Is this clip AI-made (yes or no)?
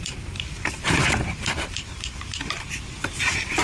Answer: yes